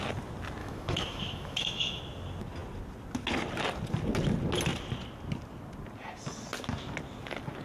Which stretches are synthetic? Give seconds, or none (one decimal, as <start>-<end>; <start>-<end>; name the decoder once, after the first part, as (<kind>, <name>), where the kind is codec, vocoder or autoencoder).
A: 0.6-2.0 (autoencoder, DAC-VAE)